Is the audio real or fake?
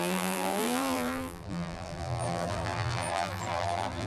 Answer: fake